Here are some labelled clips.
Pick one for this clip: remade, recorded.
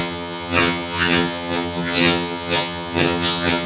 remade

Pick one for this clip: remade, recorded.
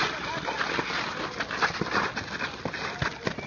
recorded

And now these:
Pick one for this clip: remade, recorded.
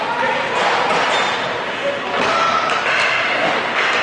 recorded